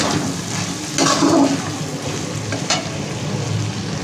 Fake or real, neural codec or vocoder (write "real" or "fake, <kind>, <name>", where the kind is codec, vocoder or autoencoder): real